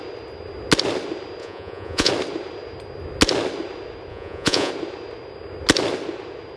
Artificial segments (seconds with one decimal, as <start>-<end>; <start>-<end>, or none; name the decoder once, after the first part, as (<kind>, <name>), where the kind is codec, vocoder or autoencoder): 1.4-2.1 (vocoder, Vocos); 4.1-4.7